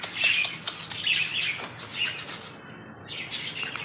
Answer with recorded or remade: recorded